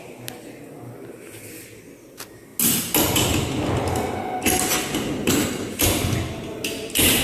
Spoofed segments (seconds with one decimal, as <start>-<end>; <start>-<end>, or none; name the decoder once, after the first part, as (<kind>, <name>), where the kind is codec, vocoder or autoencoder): none